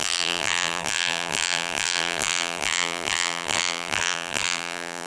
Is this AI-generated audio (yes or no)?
yes